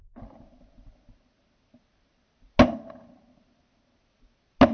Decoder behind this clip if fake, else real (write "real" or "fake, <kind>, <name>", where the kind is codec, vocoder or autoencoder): real